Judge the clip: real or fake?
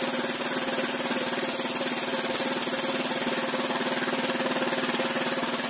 real